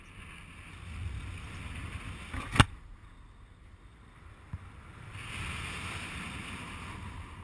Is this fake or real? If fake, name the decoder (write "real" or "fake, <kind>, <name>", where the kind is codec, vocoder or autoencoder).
real